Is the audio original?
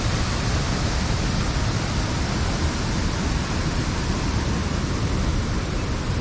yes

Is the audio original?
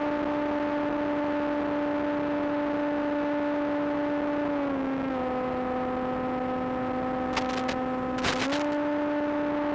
yes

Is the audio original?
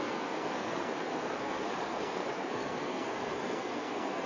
no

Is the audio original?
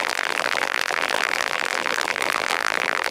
no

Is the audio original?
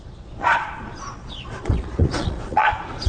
no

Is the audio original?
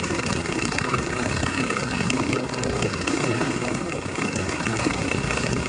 no